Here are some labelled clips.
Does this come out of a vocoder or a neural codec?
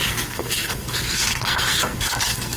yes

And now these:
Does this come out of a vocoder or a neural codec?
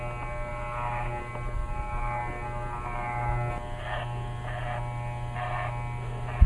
no